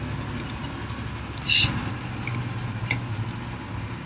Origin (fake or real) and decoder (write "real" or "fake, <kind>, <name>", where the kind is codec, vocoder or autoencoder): real